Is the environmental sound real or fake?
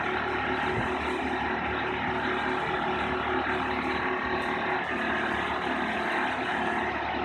real